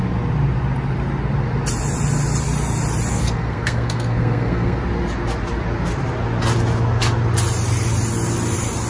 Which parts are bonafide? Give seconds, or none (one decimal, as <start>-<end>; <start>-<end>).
0.0-3.1; 4.8-8.9

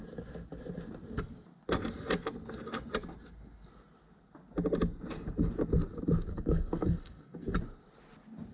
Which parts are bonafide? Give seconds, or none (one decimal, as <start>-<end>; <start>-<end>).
0.0-6.3; 7.5-8.5

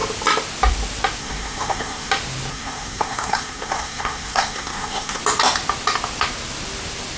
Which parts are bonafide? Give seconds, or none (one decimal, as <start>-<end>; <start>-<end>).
0.0-1.2; 2.1-2.5; 5.2-7.2

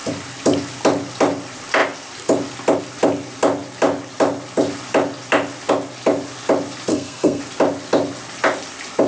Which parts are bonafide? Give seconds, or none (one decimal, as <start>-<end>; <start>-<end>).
0.0-6.9; 7.4-9.1

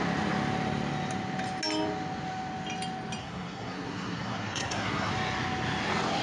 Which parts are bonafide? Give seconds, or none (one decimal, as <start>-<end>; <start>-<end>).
0.0-3.2; 5.1-6.2

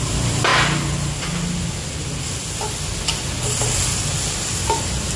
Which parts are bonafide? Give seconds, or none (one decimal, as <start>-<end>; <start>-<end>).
0.0-5.2

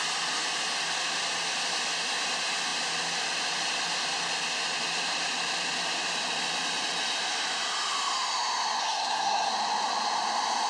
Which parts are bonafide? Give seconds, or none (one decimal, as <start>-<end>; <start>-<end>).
0.0-8.8; 9.5-10.7

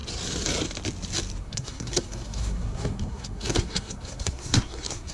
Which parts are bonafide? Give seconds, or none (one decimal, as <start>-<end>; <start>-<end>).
0.0-1.4